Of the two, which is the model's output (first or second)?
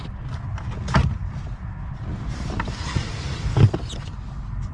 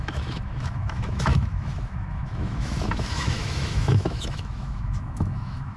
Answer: second